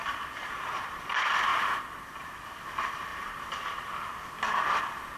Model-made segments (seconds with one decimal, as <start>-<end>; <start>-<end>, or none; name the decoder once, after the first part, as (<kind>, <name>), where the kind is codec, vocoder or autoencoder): 3.1-4.8 (vocoder, BigVGAN v2)